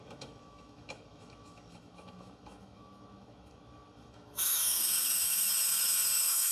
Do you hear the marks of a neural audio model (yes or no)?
yes